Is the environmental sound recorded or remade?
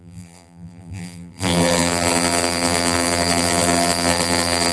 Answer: remade